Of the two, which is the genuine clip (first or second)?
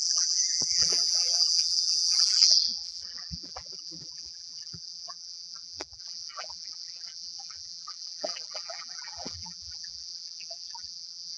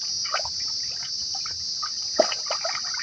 second